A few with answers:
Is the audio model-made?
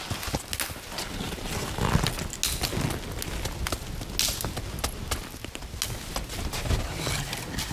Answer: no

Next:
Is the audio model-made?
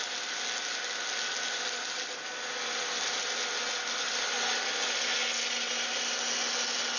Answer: no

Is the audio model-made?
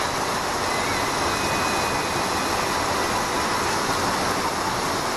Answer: no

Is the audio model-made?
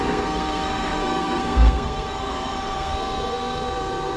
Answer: yes